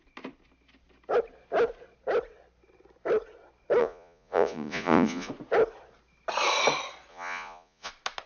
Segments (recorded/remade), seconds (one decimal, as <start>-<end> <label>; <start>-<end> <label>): 0.0-3.8 recorded; 3.8-5.3 remade; 5.3-7.1 recorded; 7.1-7.9 remade; 7.9-8.3 recorded